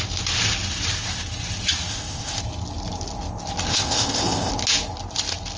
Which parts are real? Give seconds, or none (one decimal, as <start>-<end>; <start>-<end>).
0.0-1.9; 2.4-3.7; 4.5-5.6